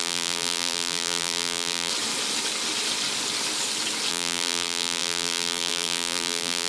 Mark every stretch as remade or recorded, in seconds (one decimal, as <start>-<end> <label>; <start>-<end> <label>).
0.0-1.9 remade; 1.9-4.1 recorded; 4.1-6.7 remade